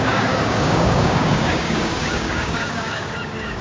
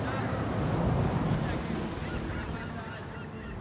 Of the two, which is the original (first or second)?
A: second